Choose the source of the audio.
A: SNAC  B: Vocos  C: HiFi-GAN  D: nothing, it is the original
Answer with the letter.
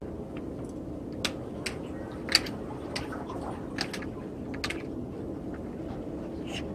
D